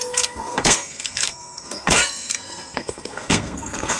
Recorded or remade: remade